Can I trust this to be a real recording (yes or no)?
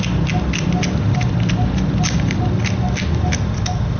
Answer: yes